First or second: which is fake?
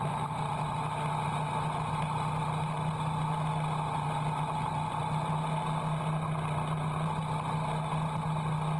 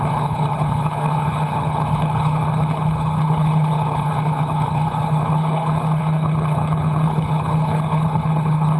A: second